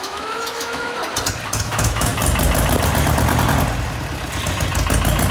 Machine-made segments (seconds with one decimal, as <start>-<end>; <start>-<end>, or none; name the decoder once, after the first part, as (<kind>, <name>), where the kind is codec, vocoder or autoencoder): 0.0-1.0 (autoencoder, DAC-VAE); 1.6-2.1